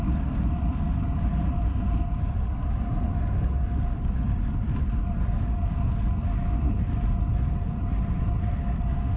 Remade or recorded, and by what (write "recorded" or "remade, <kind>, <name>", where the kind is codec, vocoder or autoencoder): recorded